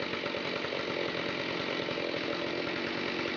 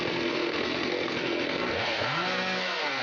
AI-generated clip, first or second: second